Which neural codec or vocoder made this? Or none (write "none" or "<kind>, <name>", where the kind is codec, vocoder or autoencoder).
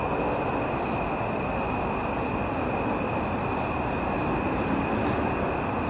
none